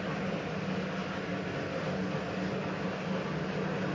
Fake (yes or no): no